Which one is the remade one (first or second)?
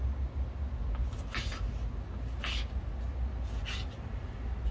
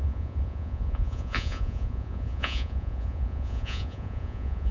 second